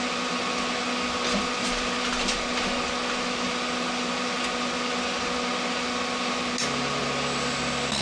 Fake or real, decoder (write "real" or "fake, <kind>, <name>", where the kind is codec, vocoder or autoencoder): real